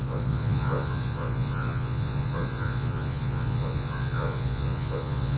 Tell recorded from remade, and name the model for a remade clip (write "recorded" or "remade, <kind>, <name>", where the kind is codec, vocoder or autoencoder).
remade, vocoder, Vocos